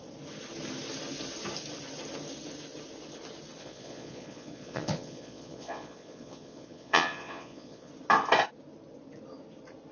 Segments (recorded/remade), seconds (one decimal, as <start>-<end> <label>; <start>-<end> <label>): 0.0-3.6 recorded; 3.6-7.9 remade; 7.9-9.9 recorded